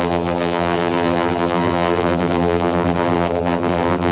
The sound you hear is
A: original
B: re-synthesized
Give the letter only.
B